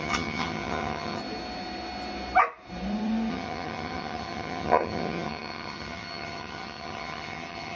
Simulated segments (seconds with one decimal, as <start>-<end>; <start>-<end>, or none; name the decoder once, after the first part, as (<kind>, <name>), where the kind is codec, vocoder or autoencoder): 0.0-1.2 (vocoder, HiFi-GAN); 3.3-7.8